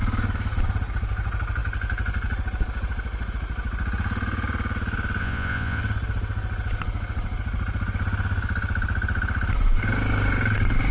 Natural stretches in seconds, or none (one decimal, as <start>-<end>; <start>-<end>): 0.0-5.2; 5.8-10.9